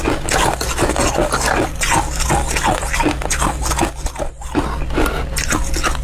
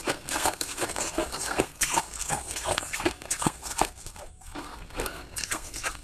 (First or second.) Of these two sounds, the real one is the first